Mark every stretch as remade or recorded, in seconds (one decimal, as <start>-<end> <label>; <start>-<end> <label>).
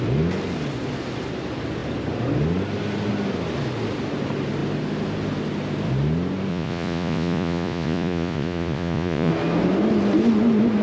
0.0-6.5 recorded; 6.5-9.3 remade; 9.3-10.8 recorded